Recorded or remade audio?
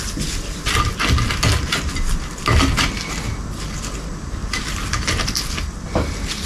recorded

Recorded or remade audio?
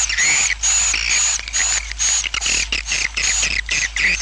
recorded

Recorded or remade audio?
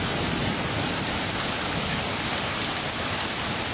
recorded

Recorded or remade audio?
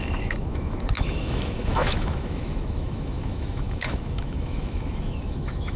remade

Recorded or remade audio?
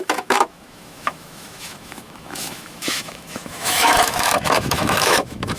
remade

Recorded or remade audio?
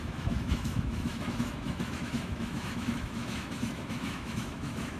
remade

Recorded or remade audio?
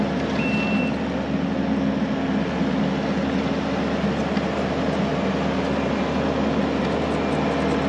recorded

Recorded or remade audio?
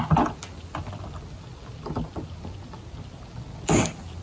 recorded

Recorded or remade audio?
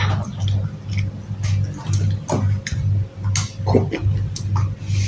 recorded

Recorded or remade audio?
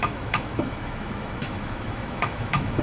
remade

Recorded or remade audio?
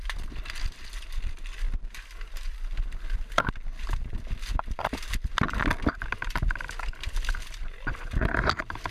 recorded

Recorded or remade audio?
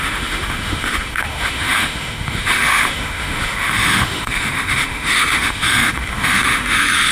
remade